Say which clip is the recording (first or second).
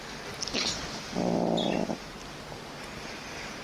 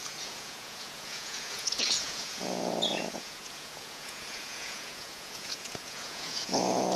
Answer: first